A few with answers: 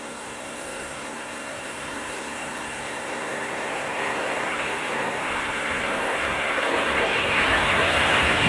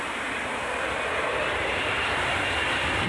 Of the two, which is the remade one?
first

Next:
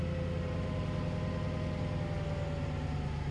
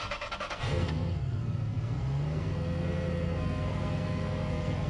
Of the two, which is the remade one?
second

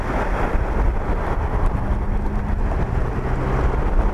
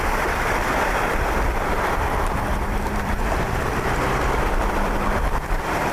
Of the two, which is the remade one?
second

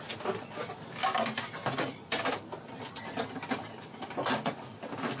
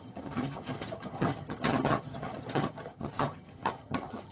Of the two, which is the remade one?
second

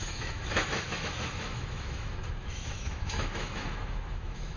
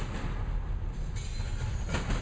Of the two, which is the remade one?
first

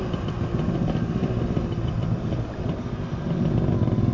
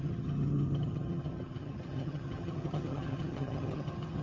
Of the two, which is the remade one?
second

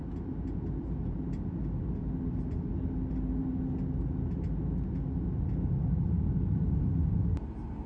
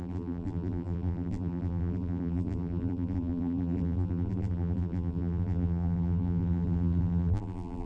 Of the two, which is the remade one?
second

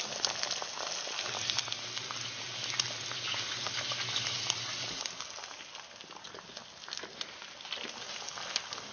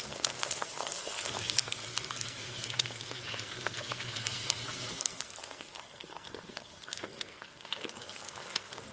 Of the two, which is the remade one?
second